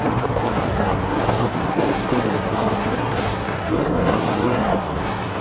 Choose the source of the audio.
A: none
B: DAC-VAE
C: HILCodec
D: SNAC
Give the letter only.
D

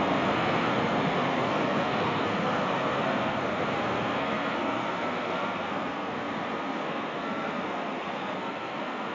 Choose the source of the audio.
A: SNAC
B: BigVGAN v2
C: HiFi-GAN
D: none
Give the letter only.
A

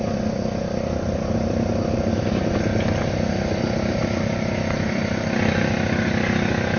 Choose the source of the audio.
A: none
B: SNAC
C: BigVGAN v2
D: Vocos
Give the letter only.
A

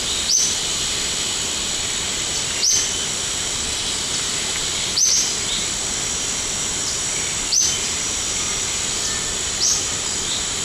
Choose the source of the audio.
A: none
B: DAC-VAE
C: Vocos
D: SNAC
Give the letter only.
A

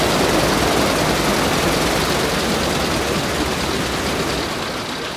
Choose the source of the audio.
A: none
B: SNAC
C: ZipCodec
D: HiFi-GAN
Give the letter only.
A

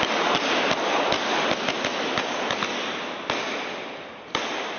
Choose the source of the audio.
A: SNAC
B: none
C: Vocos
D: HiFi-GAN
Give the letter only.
B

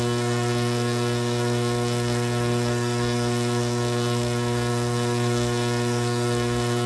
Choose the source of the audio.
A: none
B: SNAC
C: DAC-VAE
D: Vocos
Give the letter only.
B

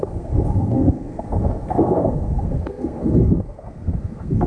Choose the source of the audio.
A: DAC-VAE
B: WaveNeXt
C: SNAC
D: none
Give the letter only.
C